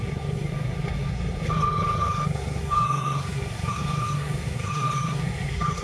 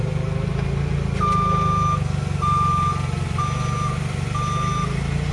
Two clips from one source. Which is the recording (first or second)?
second